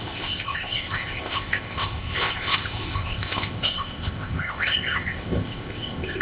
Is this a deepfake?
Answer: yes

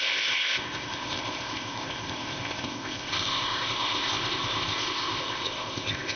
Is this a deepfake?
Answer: yes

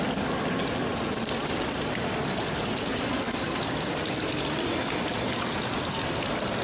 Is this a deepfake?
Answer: no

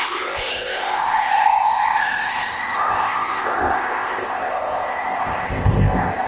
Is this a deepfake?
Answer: yes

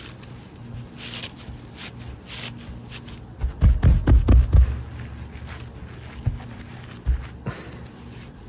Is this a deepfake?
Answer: no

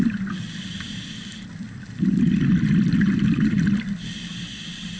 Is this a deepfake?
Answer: no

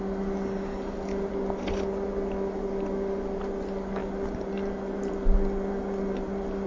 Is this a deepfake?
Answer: no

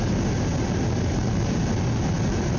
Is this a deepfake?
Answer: no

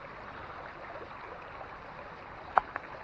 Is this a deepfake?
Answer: no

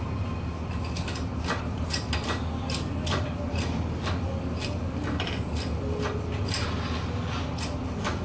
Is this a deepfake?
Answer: no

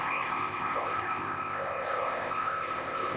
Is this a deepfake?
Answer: yes